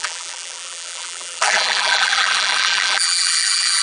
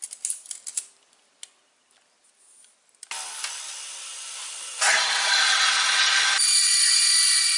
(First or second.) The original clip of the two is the second